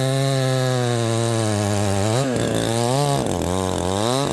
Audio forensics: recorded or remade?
recorded